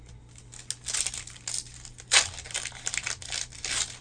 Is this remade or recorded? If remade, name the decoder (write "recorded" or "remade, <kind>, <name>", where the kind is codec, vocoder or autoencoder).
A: recorded